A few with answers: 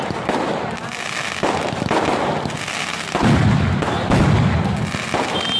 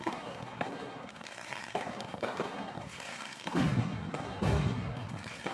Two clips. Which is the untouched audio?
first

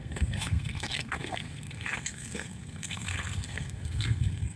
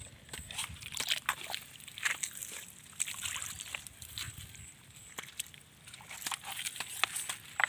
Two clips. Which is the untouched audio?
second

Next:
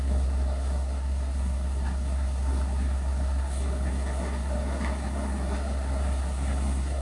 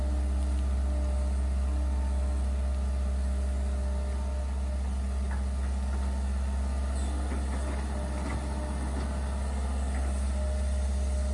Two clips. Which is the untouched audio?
second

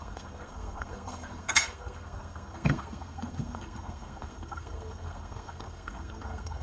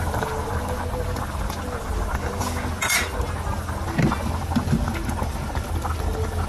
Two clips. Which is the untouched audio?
second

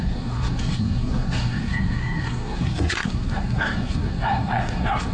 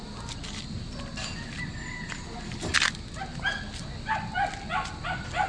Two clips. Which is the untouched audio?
second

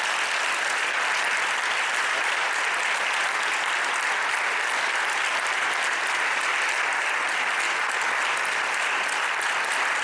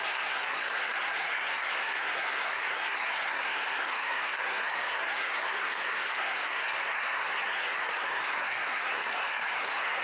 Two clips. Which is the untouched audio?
first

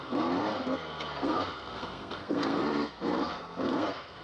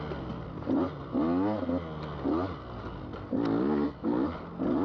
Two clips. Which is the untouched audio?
second